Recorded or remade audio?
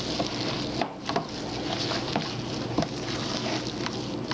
recorded